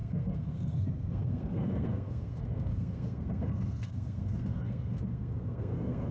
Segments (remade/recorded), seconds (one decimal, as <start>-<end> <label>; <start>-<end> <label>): 0.0-6.1 remade